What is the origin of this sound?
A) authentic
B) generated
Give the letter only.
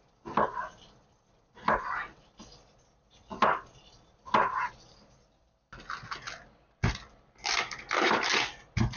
A